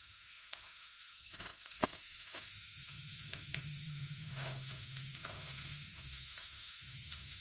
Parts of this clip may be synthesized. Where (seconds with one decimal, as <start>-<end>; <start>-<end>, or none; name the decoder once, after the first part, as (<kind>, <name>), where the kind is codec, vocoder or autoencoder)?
0.0-7.4 (autoencoder, DAC-VAE)